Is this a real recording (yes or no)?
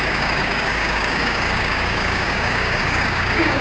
no